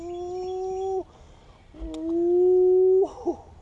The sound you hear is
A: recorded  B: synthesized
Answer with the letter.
A